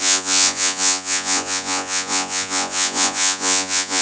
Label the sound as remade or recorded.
remade